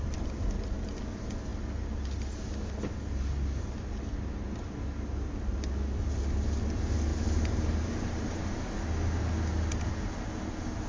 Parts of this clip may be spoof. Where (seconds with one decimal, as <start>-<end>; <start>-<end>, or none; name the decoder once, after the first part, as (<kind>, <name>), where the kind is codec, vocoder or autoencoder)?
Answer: 7.1-8.4 (vocoder, BigVGAN v2)